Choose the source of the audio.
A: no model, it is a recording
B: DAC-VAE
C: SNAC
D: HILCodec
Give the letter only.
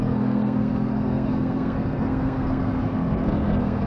C